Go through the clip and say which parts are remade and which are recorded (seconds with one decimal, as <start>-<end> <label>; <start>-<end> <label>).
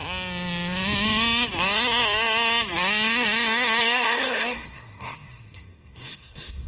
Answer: 0.0-3.8 recorded; 3.8-6.7 remade